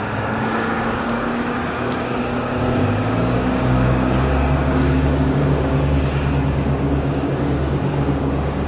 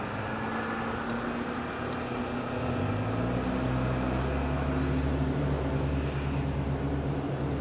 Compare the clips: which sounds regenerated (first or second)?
first